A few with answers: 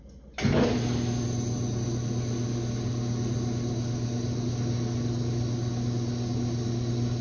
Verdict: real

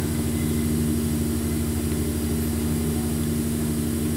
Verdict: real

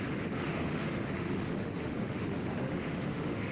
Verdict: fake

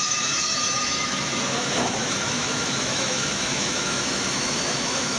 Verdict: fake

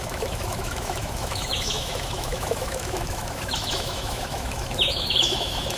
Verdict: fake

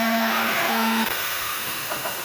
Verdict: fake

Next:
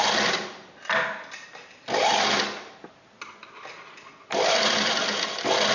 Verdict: real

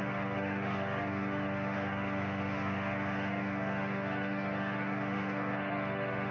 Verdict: fake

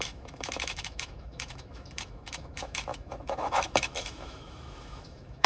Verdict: fake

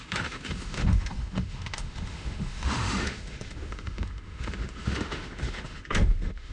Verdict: fake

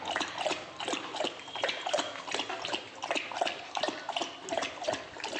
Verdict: real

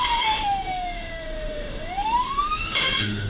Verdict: fake